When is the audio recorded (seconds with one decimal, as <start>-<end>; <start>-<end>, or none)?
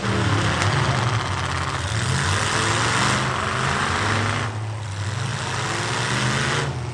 0.0-6.9